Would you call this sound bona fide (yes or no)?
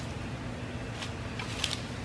yes